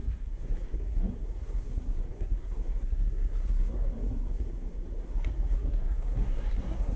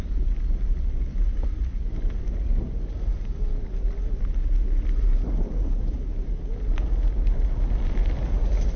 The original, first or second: second